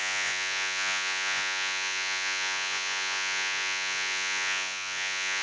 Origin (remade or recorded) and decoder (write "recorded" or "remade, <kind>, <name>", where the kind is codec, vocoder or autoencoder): remade, vocoder, Vocos